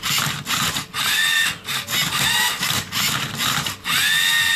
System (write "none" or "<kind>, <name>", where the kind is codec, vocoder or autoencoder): none